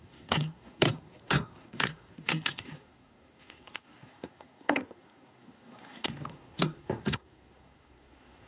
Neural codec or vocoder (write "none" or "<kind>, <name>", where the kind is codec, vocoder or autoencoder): codec, SNAC